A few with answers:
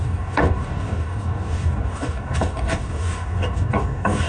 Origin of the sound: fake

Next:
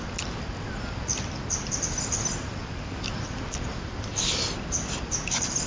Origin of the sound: real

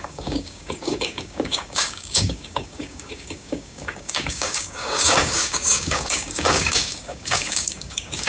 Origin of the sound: fake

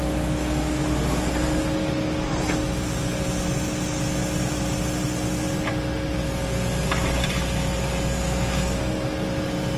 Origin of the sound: real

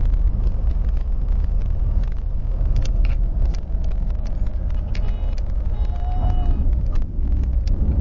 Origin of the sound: real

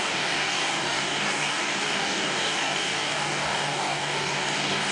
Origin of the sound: fake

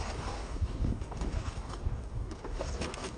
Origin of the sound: fake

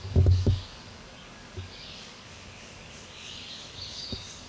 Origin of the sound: fake